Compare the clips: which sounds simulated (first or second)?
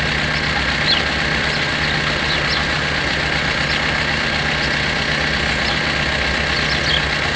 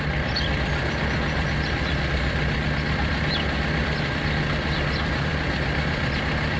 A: second